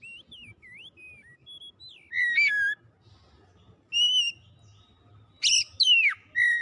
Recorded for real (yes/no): yes